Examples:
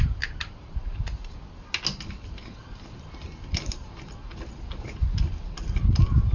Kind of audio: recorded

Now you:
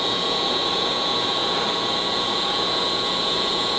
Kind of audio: remade